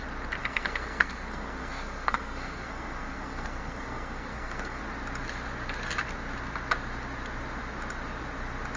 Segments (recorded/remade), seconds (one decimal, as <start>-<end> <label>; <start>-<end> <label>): 0.0-0.4 recorded; 0.4-4.8 remade; 4.8-8.8 recorded